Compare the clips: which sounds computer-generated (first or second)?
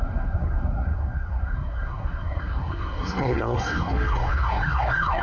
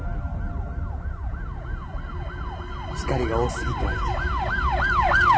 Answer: first